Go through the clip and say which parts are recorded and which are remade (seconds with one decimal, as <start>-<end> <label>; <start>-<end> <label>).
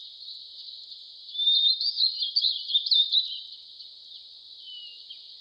0.0-0.6 recorded; 0.6-3.4 remade; 3.4-5.4 recorded